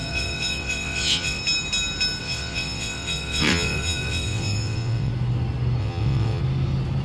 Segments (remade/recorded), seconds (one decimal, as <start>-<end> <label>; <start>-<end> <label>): 0.0-1.4 remade; 1.4-2.2 recorded; 2.2-5.1 remade; 5.1-5.8 recorded; 5.8-6.4 remade; 6.4-7.0 recorded